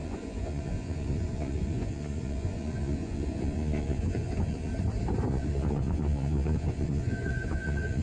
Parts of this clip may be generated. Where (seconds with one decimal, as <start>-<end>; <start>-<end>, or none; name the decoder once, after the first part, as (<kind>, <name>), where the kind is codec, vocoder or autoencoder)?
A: 0.0-4.7 (vocoder, Vocos); 5.3-8.0